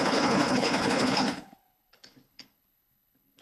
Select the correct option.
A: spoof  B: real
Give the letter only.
A